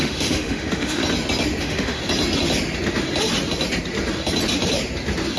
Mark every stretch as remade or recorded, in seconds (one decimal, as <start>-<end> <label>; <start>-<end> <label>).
0.0-1.0 remade; 1.0-1.6 recorded; 1.6-2.0 remade; 2.0-5.4 recorded